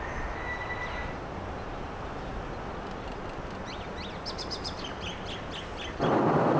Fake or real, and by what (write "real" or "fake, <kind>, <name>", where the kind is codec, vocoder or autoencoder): real